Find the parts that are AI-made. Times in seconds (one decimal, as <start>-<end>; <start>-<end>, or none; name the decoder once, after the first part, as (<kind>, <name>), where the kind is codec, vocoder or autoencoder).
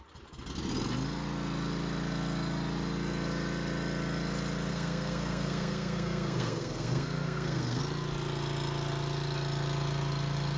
4.7-7.8 (codec, SNAC)